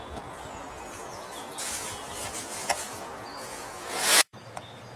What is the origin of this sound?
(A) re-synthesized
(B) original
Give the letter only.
A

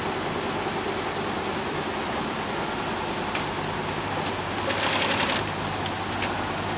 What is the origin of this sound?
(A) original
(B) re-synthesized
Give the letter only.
A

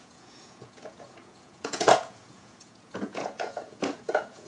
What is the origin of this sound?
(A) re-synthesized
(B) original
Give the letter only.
A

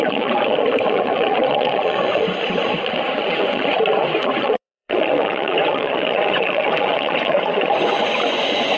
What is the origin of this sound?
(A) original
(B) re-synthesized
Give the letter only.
B